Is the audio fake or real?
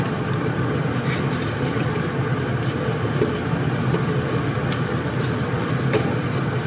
real